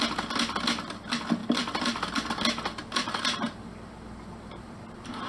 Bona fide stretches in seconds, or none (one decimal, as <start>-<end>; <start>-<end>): 0.0-1.4; 2.3-2.8